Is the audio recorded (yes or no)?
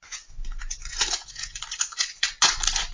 no